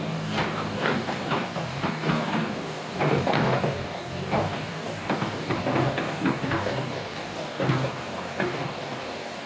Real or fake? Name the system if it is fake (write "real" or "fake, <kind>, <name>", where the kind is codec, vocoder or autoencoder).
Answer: fake, codec, DAC